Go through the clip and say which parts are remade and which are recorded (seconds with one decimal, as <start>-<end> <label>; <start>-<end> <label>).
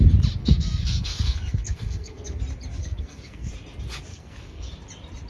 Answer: 0.0-0.4 recorded; 0.4-2.4 remade; 2.4-2.8 recorded; 2.8-3.5 remade; 3.5-4.1 recorded; 4.1-4.7 remade; 4.7-5.3 recorded